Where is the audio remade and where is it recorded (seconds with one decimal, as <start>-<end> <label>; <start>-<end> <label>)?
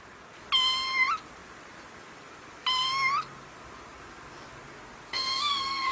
0.0-5.1 recorded; 5.1-5.9 remade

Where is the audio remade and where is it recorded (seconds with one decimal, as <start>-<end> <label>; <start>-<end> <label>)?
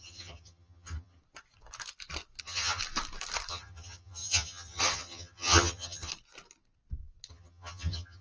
0.0-1.2 remade; 1.2-2.4 recorded; 2.4-2.8 remade; 2.8-3.5 recorded; 3.5-6.1 remade; 6.1-7.3 recorded; 7.3-8.2 remade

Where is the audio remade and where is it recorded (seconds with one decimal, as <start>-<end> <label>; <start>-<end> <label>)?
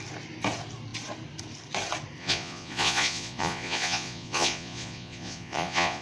0.0-2.2 recorded; 2.2-6.0 remade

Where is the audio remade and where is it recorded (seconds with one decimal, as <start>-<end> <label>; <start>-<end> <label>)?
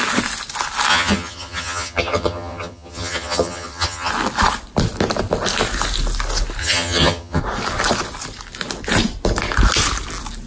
0.0-0.9 recorded; 0.9-4.1 remade; 4.1-6.6 recorded; 6.6-7.4 remade; 7.4-10.5 recorded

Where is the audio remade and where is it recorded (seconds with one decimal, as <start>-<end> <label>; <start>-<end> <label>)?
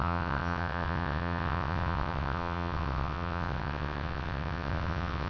0.0-5.3 remade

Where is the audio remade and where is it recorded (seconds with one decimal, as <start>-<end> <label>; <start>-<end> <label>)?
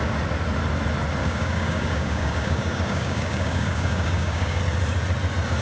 0.0-1.2 recorded; 1.2-4.6 remade; 4.6-5.6 recorded